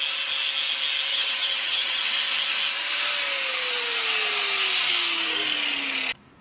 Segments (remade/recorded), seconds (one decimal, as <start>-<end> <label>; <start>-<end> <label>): 0.0-1.1 recorded; 1.1-2.0 remade; 2.0-6.4 recorded